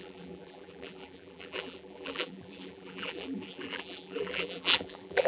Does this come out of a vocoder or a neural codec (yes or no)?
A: yes